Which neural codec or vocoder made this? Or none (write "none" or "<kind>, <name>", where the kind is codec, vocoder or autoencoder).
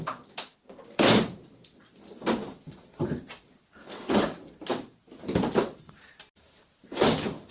none